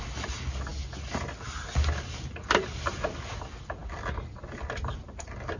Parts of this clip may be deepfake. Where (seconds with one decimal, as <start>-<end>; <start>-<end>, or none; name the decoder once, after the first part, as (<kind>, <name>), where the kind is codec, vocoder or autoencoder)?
none